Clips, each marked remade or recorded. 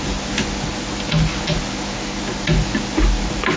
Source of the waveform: recorded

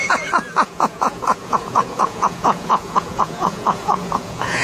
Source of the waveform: remade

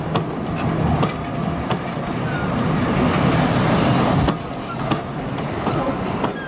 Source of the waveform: recorded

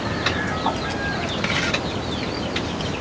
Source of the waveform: recorded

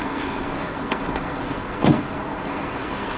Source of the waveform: remade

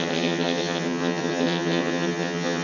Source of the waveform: remade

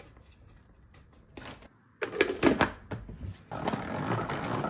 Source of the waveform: recorded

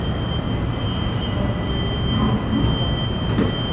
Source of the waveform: recorded